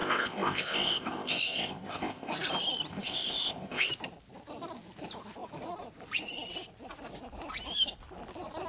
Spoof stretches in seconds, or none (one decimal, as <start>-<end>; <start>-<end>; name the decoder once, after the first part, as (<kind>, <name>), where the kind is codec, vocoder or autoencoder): 0.0-2.3 (codec, ZipCodec); 2.9-3.9